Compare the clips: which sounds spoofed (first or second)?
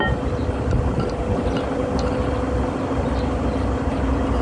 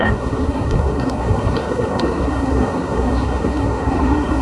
second